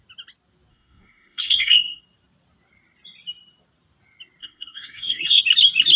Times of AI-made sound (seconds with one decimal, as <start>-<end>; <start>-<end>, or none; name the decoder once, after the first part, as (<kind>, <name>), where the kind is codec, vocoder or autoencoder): 0.7-2.0 (codec, SNAC); 4.4-5.4